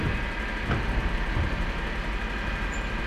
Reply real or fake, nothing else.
real